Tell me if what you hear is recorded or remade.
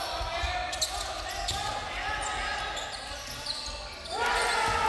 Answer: recorded